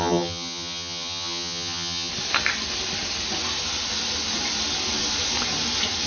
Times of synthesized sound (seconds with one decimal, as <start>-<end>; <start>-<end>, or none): 0.0-2.1

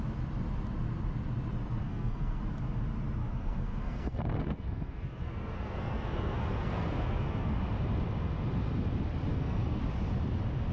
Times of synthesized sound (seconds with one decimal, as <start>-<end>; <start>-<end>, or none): 1.8-2.4; 3.2-7.6; 9.3-9.8

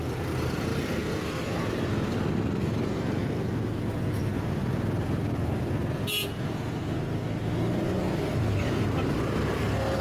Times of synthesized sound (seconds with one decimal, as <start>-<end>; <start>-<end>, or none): none

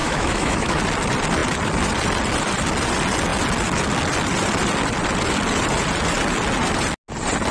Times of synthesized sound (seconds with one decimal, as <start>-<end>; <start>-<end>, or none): 0.0-0.8

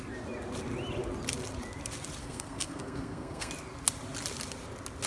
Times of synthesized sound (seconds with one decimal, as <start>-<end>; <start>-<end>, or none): 2.2-3.5

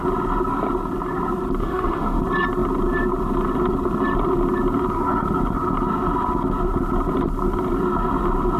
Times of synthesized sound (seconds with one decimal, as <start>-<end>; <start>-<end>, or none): 1.6-2.2

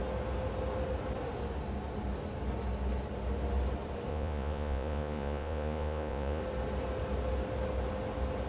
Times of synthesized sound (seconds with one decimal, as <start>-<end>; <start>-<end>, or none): 4.1-6.4

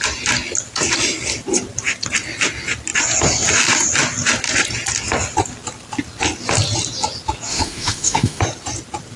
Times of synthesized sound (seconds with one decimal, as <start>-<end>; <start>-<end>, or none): 7.5-8.4